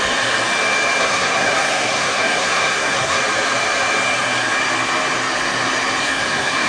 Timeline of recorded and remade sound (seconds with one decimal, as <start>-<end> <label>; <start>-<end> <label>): 0.0-1.0 recorded; 1.0-3.2 remade; 3.2-6.0 recorded; 6.0-6.7 remade